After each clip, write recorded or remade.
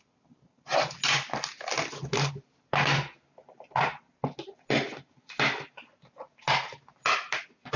recorded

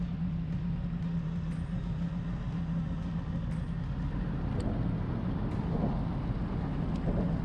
recorded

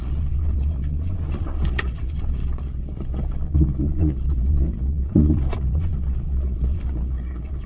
remade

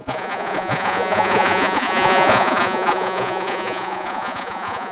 remade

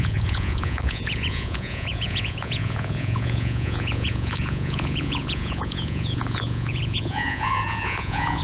remade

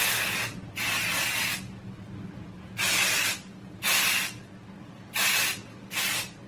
recorded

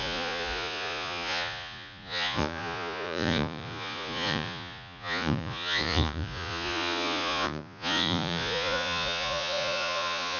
remade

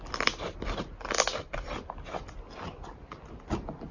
recorded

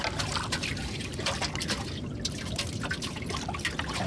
recorded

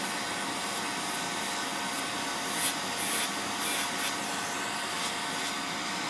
recorded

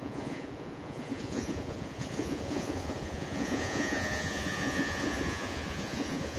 remade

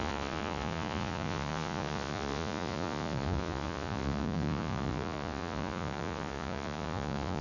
remade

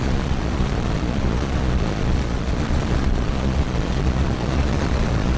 remade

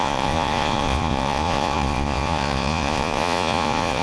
remade